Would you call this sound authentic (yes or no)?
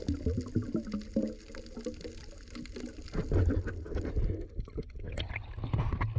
yes